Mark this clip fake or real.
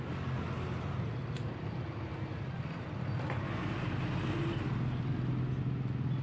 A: real